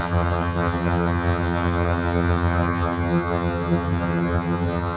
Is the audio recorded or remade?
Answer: remade